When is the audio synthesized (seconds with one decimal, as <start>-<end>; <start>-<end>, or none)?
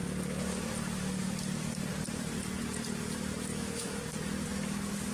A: 3.5-4.0